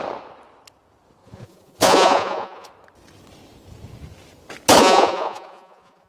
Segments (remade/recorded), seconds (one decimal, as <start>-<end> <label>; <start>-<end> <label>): 0.0-1.2 recorded; 1.2-2.7 remade; 2.7-4.8 recorded; 4.8-6.1 remade